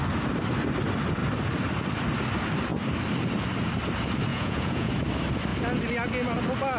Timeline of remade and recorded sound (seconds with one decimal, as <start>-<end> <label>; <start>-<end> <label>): 0.0-4.3 recorded; 4.3-4.9 remade; 4.9-6.8 recorded